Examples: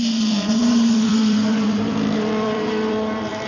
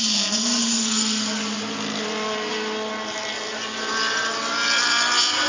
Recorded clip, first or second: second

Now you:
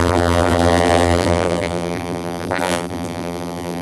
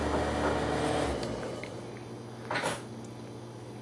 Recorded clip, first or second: second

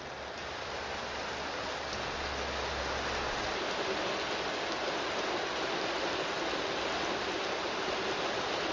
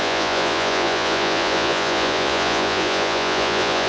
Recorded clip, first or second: first